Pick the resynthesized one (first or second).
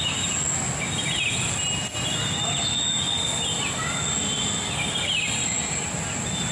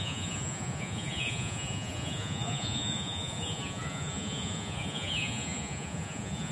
second